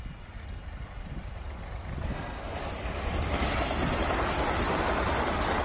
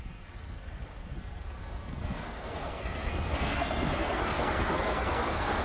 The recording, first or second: first